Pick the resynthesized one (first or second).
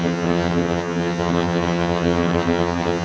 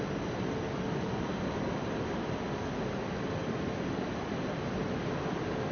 first